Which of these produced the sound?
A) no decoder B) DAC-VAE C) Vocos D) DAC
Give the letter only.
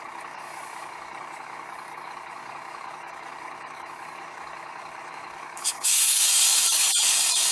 D